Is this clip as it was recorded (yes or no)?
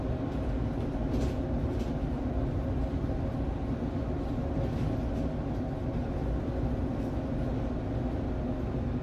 yes